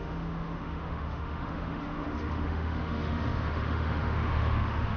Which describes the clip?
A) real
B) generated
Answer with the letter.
B